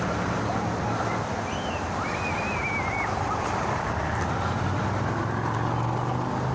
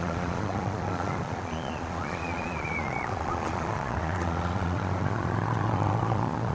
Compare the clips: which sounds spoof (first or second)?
second